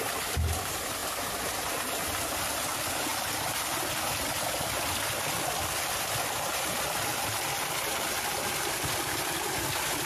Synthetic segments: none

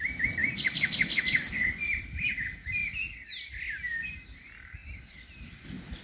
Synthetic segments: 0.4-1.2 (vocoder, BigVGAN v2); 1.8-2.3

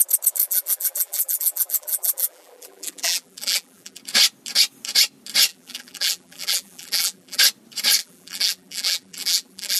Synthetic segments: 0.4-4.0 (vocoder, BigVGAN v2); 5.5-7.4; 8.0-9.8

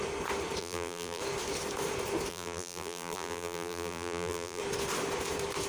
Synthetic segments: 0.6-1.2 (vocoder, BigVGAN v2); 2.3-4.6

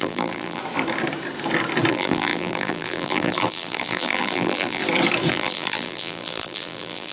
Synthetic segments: 0.0-0.6 (vocoder, BigVGAN v2); 1.9-4.8; 5.3-7.1

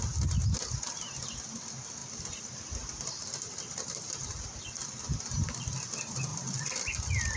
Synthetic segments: 2.0-5.6 (vocoder, BigVGAN v2)